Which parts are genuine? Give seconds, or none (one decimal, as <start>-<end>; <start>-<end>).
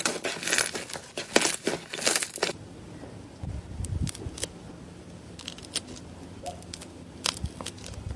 0.0-8.2